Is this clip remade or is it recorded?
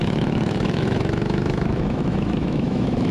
remade